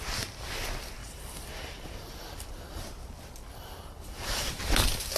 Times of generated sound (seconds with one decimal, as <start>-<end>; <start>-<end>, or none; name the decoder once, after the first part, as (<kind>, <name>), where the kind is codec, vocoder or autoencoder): 1.0-2.8 (vocoder, BigVGAN v2); 3.5-4.5